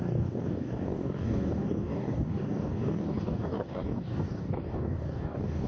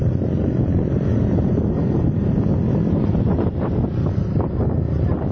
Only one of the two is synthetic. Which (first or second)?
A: first